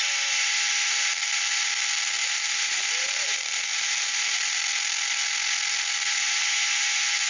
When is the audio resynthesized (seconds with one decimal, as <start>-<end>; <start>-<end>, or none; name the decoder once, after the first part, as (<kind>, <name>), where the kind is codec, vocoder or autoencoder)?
2.2-5.0 (vocoder, BigVGAN v2)